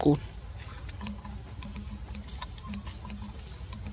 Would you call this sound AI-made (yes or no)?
no